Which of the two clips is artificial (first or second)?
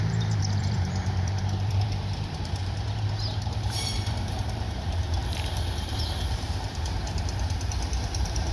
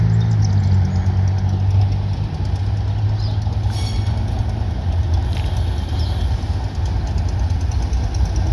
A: first